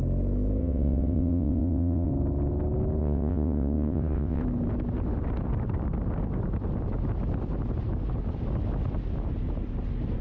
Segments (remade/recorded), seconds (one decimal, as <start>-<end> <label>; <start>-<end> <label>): 0.0-0.6 recorded; 0.6-2.1 remade; 2.1-3.0 recorded; 3.0-4.4 remade; 4.4-10.2 recorded